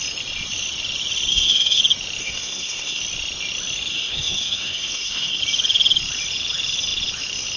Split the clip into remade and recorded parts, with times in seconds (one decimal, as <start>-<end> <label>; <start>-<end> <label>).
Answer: 0.0-1.3 recorded; 1.3-1.8 remade; 1.8-2.2 recorded; 2.2-3.0 remade; 3.0-3.9 recorded; 3.9-5.4 remade; 5.4-7.6 recorded